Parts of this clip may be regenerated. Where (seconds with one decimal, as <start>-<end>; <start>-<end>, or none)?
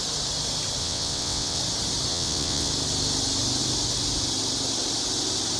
0.8-1.6; 2.1-2.7